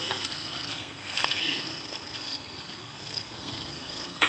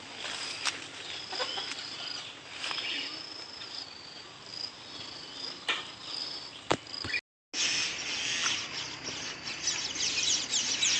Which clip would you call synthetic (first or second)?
first